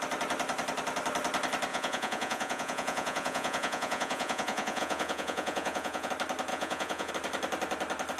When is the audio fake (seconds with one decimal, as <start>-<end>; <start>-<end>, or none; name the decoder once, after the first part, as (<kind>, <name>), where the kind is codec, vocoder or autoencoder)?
1.7-6.1 (vocoder, Vocos); 6.5-7.1